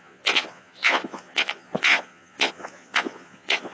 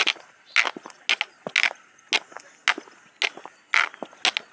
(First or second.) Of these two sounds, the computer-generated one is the first